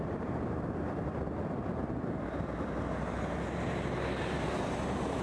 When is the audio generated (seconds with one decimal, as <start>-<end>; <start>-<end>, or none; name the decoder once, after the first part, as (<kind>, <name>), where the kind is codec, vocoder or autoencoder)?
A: 0.0-1.1 (vocoder, BigVGAN v2); 4.2-5.2